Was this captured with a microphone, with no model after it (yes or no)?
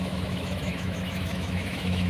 no